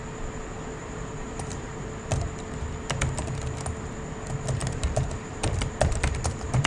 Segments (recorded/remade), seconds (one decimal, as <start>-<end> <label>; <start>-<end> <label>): 0.0-0.8 recorded; 0.8-1.7 remade; 1.7-4.6 recorded; 4.6-6.7 remade